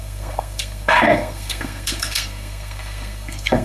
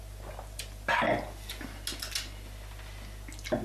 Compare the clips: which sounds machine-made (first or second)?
first